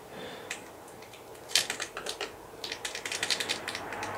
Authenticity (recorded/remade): remade